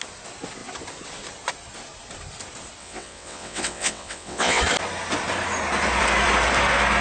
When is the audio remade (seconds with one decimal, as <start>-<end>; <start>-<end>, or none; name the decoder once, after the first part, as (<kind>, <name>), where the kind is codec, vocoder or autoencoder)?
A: 2.8-4.6 (vocoder, WaveNeXt)